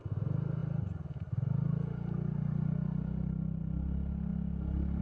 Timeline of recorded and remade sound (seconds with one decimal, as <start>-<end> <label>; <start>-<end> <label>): 0.0-5.0 recorded